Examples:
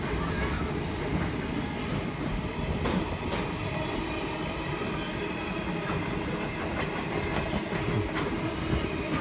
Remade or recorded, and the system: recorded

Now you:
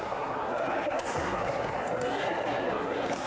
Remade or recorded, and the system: remade, codec, SNAC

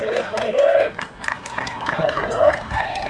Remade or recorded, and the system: remade, codec, SNAC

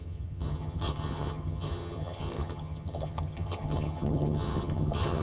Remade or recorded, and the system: remade, vocoder, HiFi-GAN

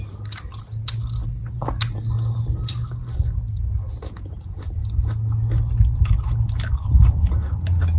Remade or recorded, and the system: recorded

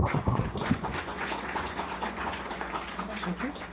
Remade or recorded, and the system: remade, vocoder, Vocos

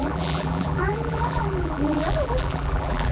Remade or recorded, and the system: remade, vocoder, BigVGAN v2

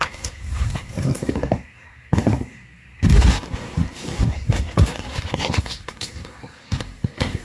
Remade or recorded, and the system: remade, codec, SNAC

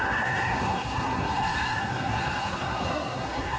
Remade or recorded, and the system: remade, codec, SNAC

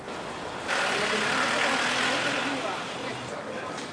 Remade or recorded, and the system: recorded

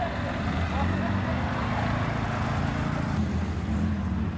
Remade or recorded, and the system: recorded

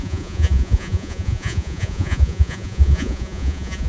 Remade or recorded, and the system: remade, vocoder, Vocos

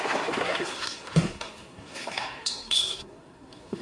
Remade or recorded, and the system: remade, codec, SNAC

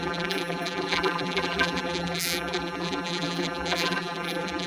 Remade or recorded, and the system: remade, vocoder, BigVGAN v2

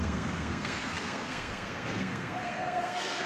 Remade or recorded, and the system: remade, codec, SNAC